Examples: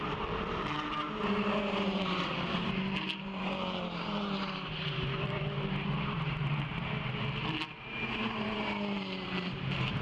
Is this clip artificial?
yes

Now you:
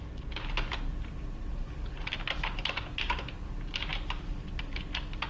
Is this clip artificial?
no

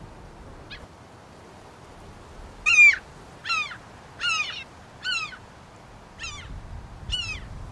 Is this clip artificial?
no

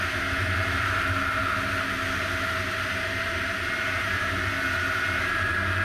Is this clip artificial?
no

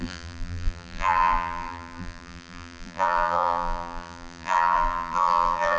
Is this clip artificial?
yes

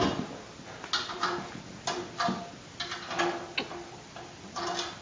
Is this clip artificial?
no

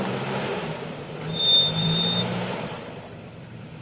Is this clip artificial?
yes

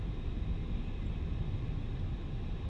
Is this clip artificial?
no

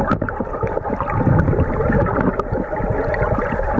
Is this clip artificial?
no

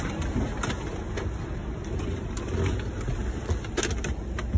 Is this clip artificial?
no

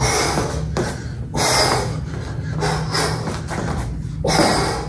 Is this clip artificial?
no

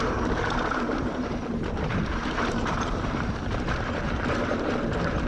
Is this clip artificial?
yes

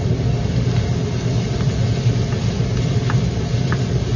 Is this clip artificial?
no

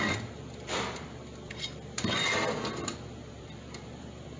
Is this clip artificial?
yes